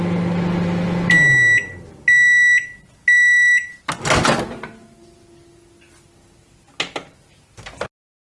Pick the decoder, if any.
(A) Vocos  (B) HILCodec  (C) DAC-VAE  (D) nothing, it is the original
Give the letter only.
D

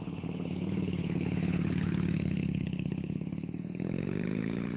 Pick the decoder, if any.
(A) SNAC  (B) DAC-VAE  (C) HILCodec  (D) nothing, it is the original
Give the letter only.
C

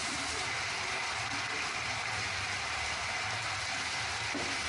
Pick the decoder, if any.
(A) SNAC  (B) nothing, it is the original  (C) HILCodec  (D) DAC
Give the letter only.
B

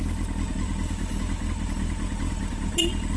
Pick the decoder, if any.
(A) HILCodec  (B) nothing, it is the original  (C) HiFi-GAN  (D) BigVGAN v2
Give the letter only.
B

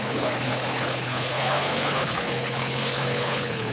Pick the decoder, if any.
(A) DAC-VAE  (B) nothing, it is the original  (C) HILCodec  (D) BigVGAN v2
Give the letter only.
C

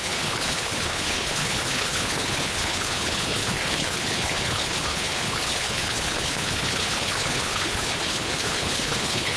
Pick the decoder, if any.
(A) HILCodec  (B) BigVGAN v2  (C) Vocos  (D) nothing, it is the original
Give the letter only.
A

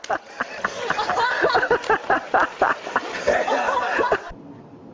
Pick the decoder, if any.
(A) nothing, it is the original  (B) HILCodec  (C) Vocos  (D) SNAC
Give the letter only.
A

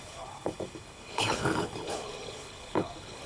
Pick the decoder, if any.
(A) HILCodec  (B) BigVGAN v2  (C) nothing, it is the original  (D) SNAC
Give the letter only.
A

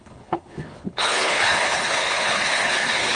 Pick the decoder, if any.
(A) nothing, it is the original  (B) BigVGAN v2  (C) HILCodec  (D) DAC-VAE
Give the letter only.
C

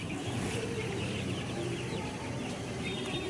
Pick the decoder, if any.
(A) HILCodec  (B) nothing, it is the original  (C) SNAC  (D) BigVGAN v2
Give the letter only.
B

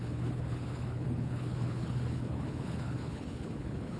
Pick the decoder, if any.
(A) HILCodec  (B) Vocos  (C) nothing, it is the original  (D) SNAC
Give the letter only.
A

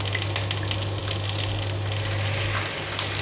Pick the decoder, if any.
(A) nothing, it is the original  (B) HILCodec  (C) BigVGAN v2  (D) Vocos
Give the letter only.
A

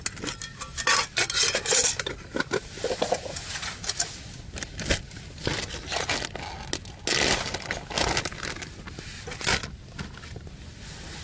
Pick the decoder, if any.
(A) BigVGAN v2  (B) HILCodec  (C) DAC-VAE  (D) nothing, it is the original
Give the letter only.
D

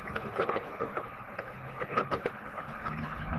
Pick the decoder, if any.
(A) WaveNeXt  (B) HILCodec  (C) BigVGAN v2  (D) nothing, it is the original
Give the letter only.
B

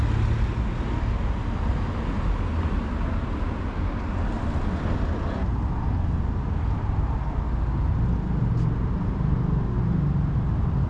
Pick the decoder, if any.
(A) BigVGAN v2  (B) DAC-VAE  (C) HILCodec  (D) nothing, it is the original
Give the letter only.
D